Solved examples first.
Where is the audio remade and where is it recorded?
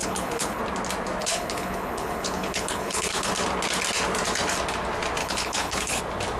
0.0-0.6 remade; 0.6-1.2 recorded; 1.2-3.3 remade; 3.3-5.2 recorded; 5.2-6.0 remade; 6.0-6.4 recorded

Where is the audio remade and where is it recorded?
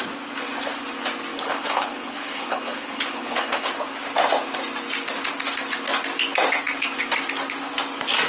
0.0-1.3 recorded; 1.3-3.7 remade; 3.7-8.3 recorded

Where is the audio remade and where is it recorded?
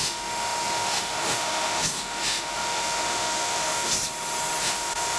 0.0-3.9 remade; 3.9-4.6 recorded; 4.6-5.2 remade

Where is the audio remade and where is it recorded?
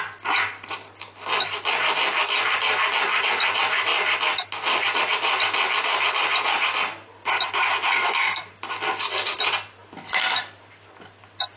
0.0-7.9 recorded; 7.9-8.5 remade; 8.5-11.6 recorded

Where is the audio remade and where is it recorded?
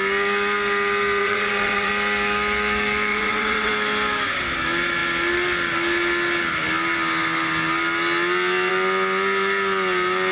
0.0-1.2 recorded; 1.2-1.9 remade; 1.9-3.1 recorded; 3.1-3.7 remade; 3.7-10.3 recorded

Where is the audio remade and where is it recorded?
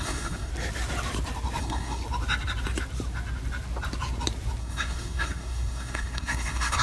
0.0-0.5 remade; 0.5-1.6 recorded; 1.6-2.0 remade; 2.0-4.6 recorded; 4.6-6.8 remade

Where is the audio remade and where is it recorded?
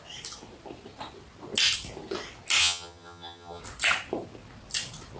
0.0-2.6 recorded; 2.6-3.6 remade; 3.6-5.2 recorded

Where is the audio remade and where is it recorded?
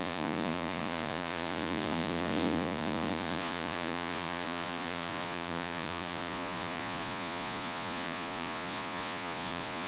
0.0-9.9 remade